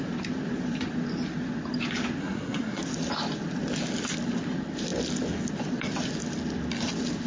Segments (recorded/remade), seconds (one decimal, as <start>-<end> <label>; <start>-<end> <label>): 0.0-2.2 recorded; 2.2-2.8 remade; 2.8-7.3 recorded

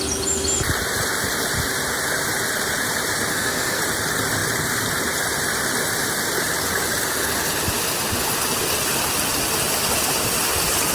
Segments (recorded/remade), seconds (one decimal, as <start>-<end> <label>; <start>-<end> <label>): 0.0-3.3 recorded; 3.3-3.8 remade; 3.8-10.9 recorded

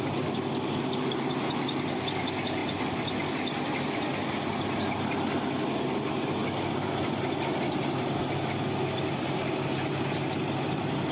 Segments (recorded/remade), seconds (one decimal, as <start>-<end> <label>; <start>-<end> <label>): 0.0-11.1 recorded

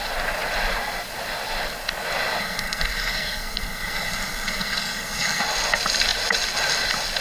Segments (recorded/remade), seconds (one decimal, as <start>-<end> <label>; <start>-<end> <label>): 0.0-2.4 recorded; 2.4-5.4 remade; 5.4-7.2 recorded

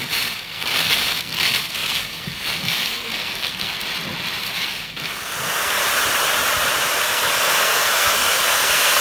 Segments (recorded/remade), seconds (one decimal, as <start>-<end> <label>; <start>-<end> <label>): 0.0-3.8 remade; 3.8-4.4 recorded; 4.4-5.8 remade; 5.8-7.0 recorded; 7.0-9.0 remade